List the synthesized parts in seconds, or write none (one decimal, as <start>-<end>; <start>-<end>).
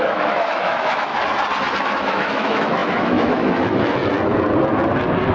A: 0.0-1.1; 1.8-4.0